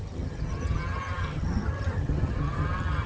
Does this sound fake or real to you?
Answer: fake